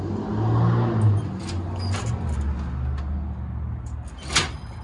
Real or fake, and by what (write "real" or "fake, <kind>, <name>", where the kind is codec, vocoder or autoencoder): real